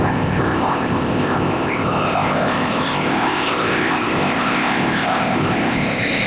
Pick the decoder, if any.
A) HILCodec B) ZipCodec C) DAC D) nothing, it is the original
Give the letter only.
B